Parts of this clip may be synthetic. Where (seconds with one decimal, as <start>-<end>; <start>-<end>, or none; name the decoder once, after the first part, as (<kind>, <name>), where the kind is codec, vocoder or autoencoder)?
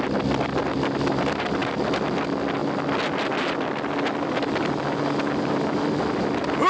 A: none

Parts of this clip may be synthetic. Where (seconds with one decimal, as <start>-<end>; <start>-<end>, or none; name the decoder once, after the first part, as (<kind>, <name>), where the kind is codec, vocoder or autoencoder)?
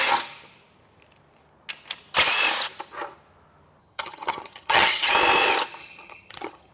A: 3.8-5.1 (vocoder, HiFi-GAN); 5.8-6.7